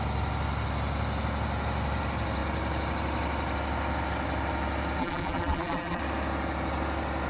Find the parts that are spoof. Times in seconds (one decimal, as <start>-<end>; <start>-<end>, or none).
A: 5.0-6.0